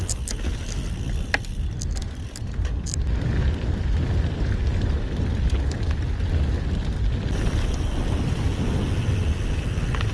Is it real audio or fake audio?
real